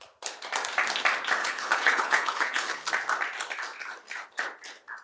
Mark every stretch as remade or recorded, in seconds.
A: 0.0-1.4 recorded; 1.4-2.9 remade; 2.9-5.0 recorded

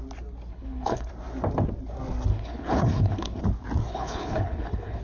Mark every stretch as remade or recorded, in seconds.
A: 0.0-0.5 recorded; 0.5-1.1 remade; 1.1-2.3 recorded; 2.3-3.4 remade; 3.4-3.9 recorded; 3.9-5.0 remade

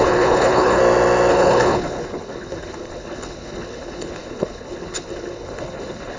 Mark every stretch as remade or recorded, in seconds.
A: 0.0-0.8 remade; 0.8-1.3 recorded; 1.3-6.2 remade

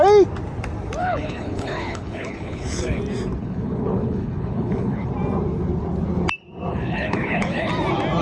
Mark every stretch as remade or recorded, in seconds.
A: 0.0-1.0 recorded; 1.0-3.0 remade; 3.0-3.4 recorded; 3.4-5.1 remade; 5.1-6.7 recorded; 6.7-7.7 remade; 7.7-8.2 recorded

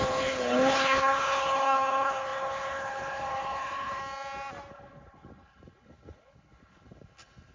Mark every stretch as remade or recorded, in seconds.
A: 0.0-4.0 remade; 4.0-4.7 recorded; 4.7-7.5 remade

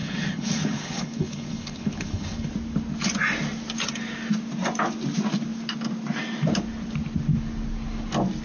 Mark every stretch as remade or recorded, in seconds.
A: 0.0-2.5 remade; 2.5-8.4 recorded

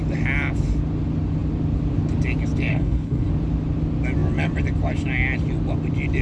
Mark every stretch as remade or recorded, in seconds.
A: 0.0-2.7 recorded; 2.7-3.3 remade; 3.3-6.2 recorded

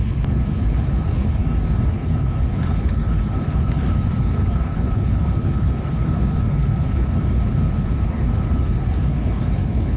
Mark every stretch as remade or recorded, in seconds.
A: 0.0-1.4 remade; 1.4-1.9 recorded; 1.9-10.0 remade